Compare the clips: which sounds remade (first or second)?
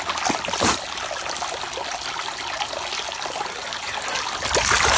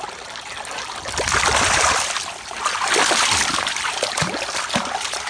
second